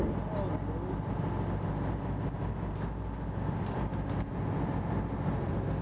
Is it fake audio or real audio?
real